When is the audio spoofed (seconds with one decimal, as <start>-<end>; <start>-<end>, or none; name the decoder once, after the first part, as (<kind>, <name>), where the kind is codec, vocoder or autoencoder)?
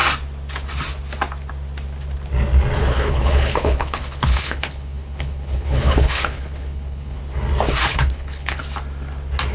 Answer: 2.8-7.2 (codec, HILCodec); 7.9-8.6